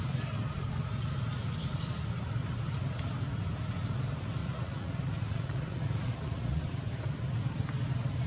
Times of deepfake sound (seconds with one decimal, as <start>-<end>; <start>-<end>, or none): 4.4-6.6